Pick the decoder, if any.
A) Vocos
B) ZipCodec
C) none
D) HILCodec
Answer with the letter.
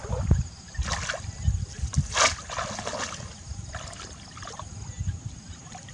C